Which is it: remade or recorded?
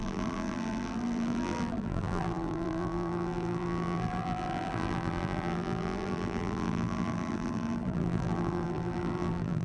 remade